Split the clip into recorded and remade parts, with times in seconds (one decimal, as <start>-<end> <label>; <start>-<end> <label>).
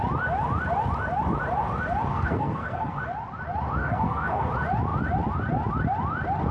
0.0-2.1 recorded; 2.1-3.0 remade; 3.0-3.8 recorded; 3.8-4.5 remade; 4.5-6.5 recorded